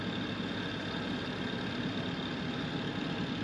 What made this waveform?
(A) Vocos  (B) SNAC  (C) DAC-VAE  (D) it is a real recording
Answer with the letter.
D